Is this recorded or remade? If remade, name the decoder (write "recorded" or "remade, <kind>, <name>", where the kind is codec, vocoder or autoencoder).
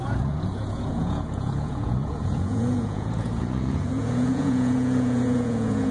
remade, vocoder, Vocos